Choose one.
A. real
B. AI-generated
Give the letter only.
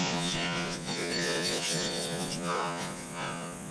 B